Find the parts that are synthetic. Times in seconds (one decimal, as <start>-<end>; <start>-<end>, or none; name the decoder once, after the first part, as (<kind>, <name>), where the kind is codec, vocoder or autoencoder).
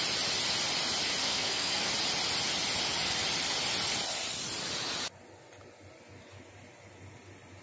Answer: 1.2-1.9 (codec, SNAC)